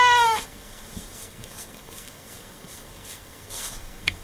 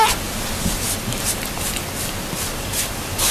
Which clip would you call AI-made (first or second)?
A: first